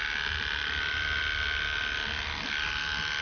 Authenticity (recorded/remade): recorded